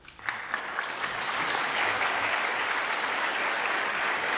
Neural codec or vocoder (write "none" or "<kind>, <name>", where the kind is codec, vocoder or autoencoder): codec, DAC